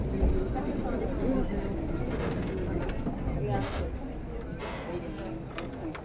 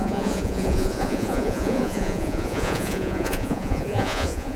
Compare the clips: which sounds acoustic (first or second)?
first